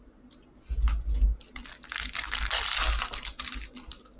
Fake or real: real